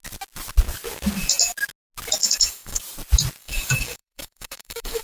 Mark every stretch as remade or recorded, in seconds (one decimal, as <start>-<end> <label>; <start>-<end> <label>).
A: 0.0-2.2 recorded; 2.2-2.8 remade; 2.8-3.4 recorded; 3.4-5.0 remade